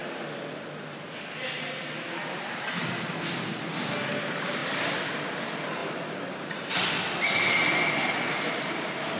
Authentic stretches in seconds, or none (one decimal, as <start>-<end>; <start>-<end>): 0.0-5.8; 6.9-9.2